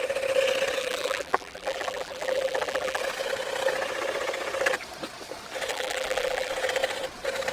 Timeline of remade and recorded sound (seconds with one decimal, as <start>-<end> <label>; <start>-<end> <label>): 0.0-0.8 recorded; 0.8-3.0 remade; 3.0-5.7 recorded; 5.7-6.5 remade; 6.5-7.5 recorded